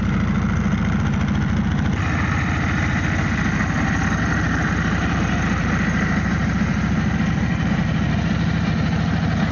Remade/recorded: recorded